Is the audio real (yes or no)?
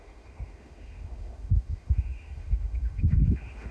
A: no